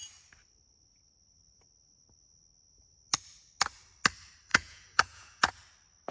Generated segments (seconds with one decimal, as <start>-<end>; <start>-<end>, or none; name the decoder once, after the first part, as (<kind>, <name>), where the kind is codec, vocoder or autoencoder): 4.5-5.5 (vocoder, Vocos)